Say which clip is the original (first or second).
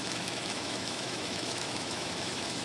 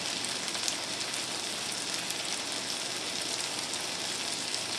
second